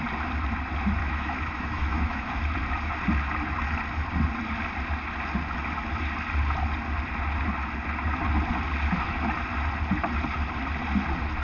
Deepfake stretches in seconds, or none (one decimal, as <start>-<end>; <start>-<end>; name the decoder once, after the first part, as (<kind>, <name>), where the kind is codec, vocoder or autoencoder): 1.0-2.4 (autoencoder, DAC-VAE)